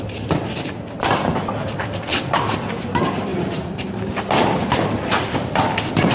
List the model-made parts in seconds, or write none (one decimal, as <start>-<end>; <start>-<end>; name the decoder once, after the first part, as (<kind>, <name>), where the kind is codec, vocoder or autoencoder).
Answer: none